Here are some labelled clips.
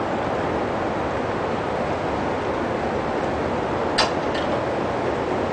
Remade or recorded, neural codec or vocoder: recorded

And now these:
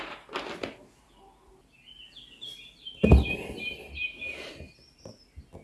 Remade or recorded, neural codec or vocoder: recorded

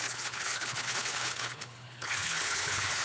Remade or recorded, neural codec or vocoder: remade, codec, HILCodec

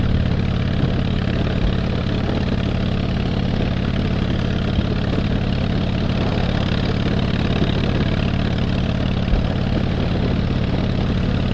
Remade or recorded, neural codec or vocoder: recorded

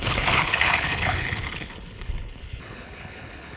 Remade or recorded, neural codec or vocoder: remade, codec, HILCodec